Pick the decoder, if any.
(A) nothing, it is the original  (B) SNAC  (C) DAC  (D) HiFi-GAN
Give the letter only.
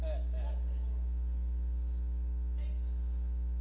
A